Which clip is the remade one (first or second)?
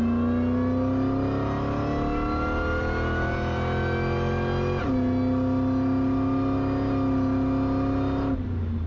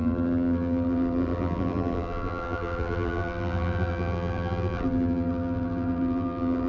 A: second